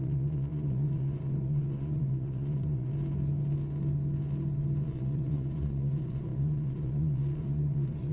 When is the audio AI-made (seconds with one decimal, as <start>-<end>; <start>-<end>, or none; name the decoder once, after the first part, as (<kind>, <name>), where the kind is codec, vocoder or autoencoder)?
0.0-2.9 (vocoder, Vocos); 4.8-8.1